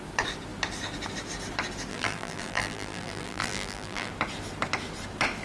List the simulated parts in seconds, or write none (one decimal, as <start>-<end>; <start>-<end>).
1.9-4.1